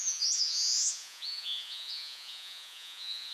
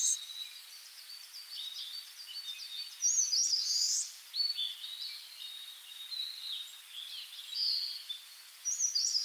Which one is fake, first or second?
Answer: first